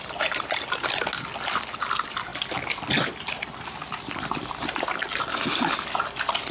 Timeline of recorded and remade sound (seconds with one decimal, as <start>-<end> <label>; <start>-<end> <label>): 0.0-6.5 recorded